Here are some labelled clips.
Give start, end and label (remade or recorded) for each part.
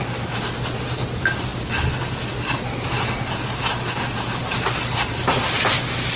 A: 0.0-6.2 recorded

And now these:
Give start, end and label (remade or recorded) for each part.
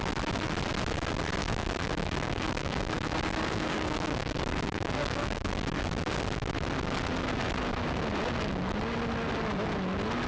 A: 0.0-1.4 recorded; 1.4-5.5 remade; 5.5-10.3 recorded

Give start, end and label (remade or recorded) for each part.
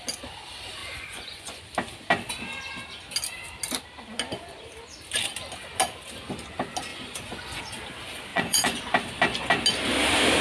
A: 0.0-0.8 recorded; 0.8-1.6 remade; 1.6-6.9 recorded; 6.9-7.6 remade; 7.6-8.3 recorded; 8.3-8.8 remade; 8.8-10.4 recorded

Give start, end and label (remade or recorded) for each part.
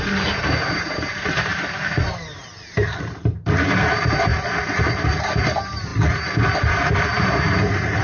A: 0.0-5.9 remade; 5.9-6.6 recorded; 6.6-8.0 remade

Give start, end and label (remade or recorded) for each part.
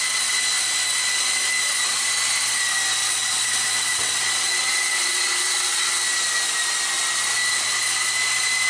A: 0.0-3.0 recorded; 3.0-6.0 remade; 6.0-8.7 recorded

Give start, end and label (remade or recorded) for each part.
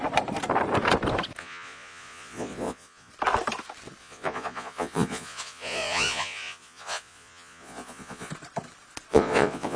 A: 0.0-1.4 recorded; 1.4-3.1 remade; 3.1-4.0 recorded; 4.0-8.3 remade; 8.3-9.1 recorded; 9.1-9.8 remade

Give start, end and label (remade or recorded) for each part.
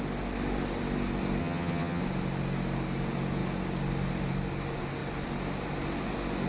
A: 0.0-1.4 recorded; 1.4-2.0 remade; 2.0-6.5 recorded